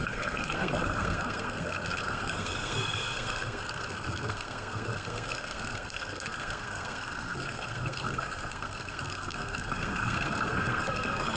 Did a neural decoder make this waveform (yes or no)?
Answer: yes